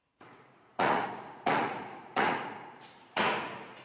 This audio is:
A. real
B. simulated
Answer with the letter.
B